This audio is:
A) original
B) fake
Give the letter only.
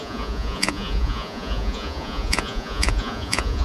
B